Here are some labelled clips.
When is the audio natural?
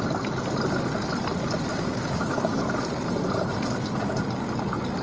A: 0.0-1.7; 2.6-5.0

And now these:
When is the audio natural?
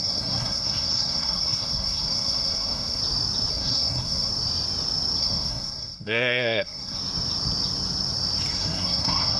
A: 3.0-3.5; 4.3-5.2; 7.0-8.5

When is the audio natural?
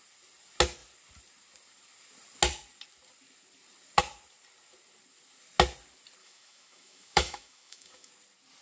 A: 0.0-6.2; 8.1-8.6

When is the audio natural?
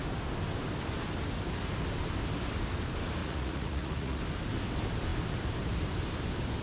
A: 0.0-3.2; 4.2-6.6